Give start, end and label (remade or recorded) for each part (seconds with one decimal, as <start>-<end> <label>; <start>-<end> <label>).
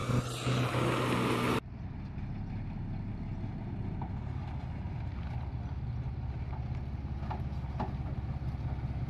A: 0.0-9.1 recorded